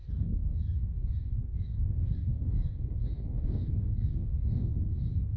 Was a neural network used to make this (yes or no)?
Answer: yes